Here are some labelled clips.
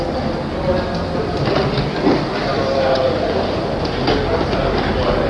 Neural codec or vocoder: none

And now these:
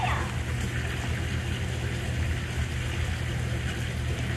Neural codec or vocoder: none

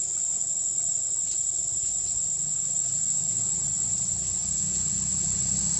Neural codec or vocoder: none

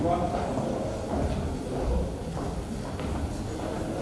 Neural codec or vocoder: none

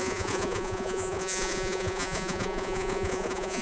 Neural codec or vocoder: vocoder, Vocos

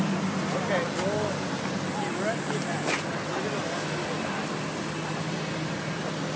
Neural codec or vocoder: none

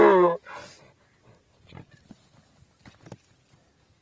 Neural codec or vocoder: none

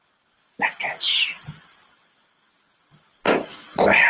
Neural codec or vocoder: none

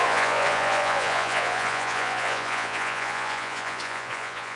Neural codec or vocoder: vocoder, Vocos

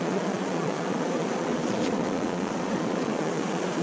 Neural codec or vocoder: vocoder, Vocos